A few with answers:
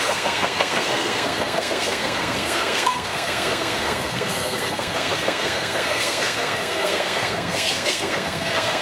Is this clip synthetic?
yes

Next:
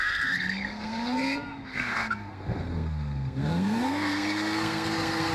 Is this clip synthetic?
yes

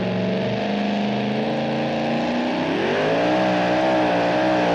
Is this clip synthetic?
no